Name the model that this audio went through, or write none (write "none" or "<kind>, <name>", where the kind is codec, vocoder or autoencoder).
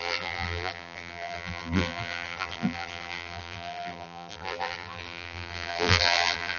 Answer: vocoder, BigVGAN v2